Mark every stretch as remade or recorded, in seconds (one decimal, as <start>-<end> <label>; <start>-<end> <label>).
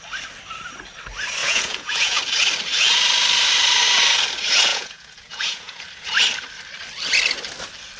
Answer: 0.0-1.4 recorded; 1.4-2.2 remade; 2.2-4.7 recorded; 4.7-5.8 remade; 5.8-8.0 recorded